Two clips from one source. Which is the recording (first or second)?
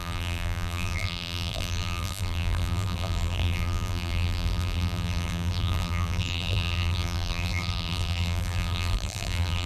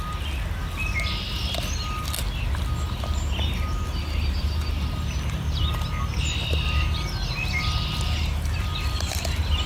second